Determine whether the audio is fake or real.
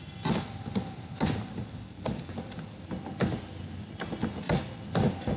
real